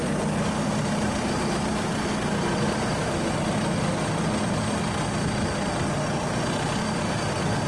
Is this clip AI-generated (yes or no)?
no